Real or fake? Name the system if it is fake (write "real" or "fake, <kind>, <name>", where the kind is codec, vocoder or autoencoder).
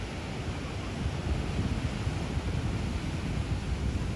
real